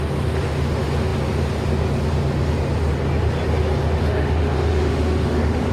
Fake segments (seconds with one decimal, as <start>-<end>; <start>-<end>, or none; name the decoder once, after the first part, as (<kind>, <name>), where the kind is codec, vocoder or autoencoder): 4.0-5.7 (autoencoder, DAC-VAE)